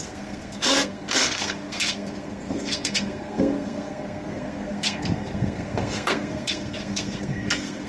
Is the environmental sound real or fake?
fake